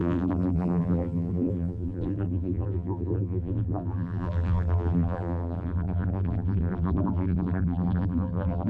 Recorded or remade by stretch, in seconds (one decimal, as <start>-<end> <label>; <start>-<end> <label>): 0.0-8.7 remade